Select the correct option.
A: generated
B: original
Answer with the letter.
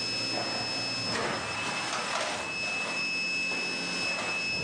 B